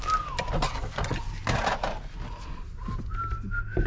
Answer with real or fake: real